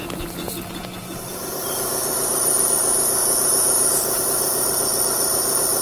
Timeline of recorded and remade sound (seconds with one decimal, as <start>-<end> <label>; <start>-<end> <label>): 0.0-3.2 recorded; 3.2-4.2 remade; 4.2-5.8 recorded